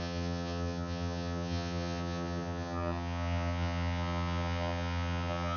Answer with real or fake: fake